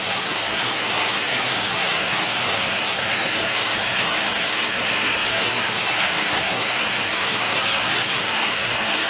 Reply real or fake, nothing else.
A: fake